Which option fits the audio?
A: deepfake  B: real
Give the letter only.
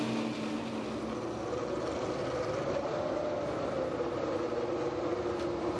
B